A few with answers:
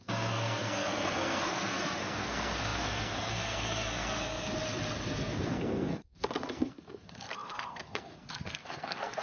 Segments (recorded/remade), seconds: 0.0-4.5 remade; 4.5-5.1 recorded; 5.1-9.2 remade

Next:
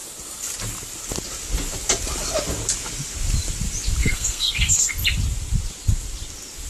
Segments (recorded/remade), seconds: 0.0-4.0 recorded; 4.0-4.9 remade; 4.9-6.7 recorded